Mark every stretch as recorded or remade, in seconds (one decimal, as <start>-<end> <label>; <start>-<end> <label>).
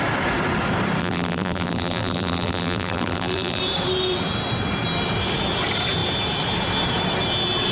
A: 0.0-1.0 recorded; 1.0-3.6 remade; 3.6-7.7 recorded